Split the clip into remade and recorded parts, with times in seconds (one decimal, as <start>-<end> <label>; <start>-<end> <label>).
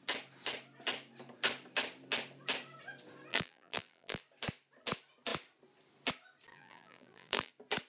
0.0-3.3 recorded; 3.3-4.2 remade; 4.2-6.5 recorded; 6.5-7.5 remade; 7.5-7.9 recorded